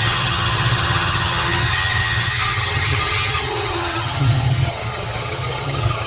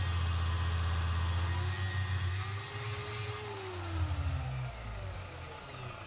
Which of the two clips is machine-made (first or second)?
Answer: first